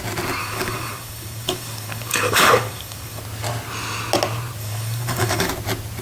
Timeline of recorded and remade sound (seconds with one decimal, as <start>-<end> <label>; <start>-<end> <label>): 0.0-0.4 recorded; 0.4-3.2 remade; 3.2-4.6 recorded; 4.6-5.5 remade; 5.5-6.0 recorded